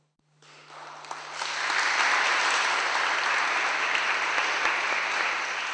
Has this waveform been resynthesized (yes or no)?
no